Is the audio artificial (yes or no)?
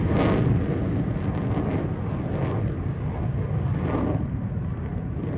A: no